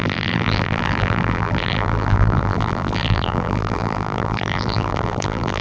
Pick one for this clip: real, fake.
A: fake